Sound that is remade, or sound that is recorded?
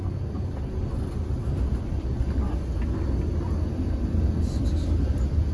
recorded